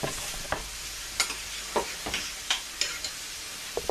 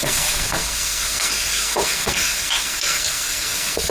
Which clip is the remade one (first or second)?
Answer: second